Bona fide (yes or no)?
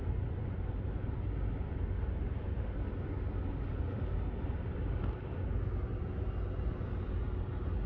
yes